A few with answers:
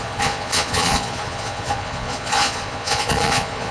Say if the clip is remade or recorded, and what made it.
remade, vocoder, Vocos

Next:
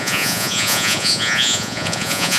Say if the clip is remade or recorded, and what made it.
remade, vocoder, Vocos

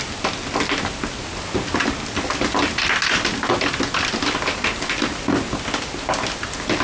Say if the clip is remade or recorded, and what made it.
recorded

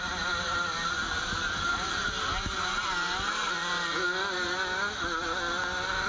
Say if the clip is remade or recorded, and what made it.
recorded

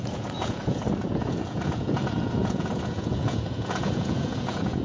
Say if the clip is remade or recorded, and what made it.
remade, vocoder, Vocos